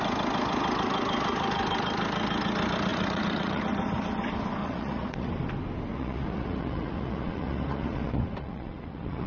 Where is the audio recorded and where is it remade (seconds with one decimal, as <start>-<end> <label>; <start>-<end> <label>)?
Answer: 0.0-2.9 recorded; 2.9-3.6 remade; 3.6-4.6 recorded; 4.6-5.3 remade; 5.3-5.9 recorded; 5.9-9.3 remade